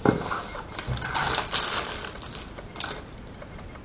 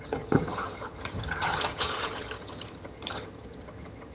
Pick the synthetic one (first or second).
second